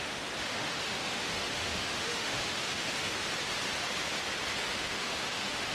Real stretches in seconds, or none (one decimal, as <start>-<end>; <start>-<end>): 3.2-4.6

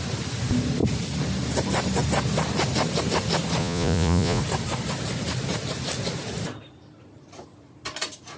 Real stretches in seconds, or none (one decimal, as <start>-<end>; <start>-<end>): 0.0-3.6; 4.4-8.4

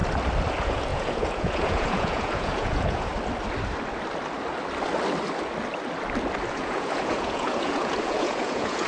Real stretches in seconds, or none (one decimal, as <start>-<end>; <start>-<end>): 0.0-0.5; 3.1-6.5

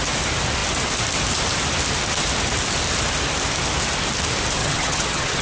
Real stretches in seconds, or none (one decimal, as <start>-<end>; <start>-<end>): 0.0-4.6

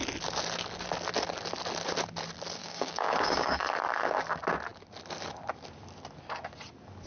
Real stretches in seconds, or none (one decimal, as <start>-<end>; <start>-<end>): 0.0-2.6; 3.6-7.1

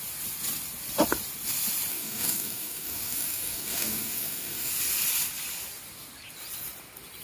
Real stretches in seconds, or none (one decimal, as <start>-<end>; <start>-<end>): 0.0-1.9; 4.7-7.2

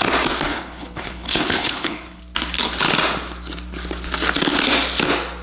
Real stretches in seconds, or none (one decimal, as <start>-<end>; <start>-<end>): 0.0-0.5; 2.2-5.4

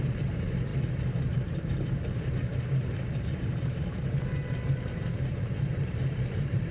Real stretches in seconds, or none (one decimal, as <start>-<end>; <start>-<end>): none